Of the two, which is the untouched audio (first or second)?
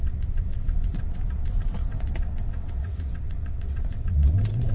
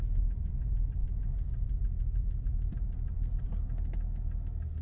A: second